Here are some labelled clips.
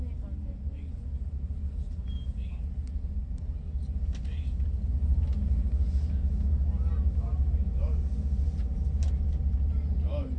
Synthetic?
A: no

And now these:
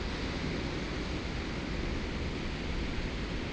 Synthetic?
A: no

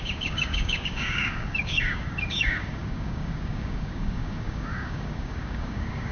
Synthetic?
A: yes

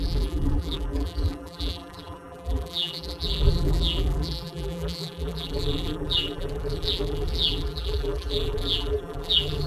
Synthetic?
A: yes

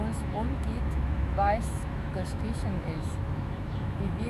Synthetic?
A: yes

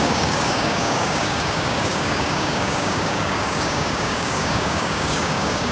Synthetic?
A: yes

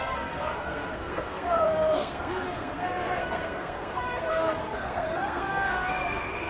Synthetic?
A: yes